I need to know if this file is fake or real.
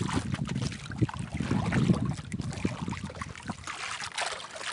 real